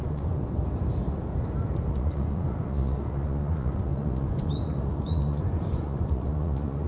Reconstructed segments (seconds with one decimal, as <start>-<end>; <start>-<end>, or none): 0.0-0.4; 1.9-6.9